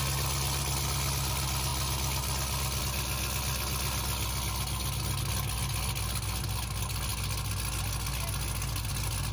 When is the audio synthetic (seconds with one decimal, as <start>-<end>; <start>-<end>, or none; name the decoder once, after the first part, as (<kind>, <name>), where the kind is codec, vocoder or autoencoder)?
none